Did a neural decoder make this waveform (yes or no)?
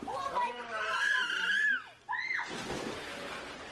no